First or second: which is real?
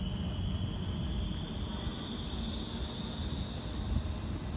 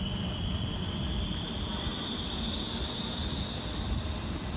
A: first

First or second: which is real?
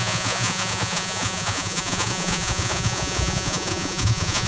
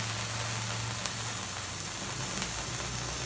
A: second